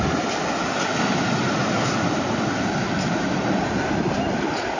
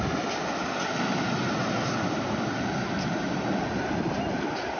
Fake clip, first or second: first